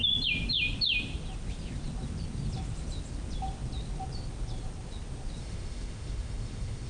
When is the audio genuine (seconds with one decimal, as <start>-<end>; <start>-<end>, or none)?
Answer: 0.0-5.4